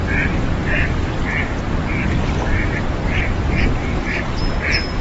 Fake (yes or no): no